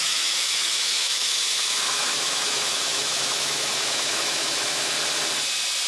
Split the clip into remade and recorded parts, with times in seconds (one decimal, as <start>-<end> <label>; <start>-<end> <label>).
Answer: 0.0-4.9 remade; 4.9-5.9 recorded